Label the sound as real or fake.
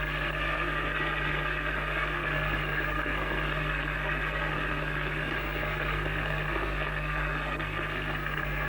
fake